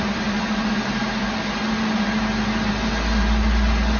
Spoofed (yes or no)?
no